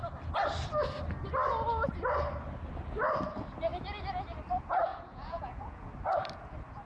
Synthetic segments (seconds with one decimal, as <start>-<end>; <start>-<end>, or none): 4.9-5.8